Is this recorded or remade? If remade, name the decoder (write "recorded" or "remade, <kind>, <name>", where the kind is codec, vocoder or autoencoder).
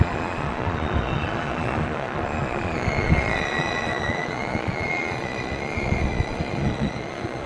remade, vocoder, Vocos